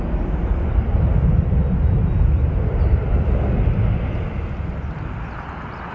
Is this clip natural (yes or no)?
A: yes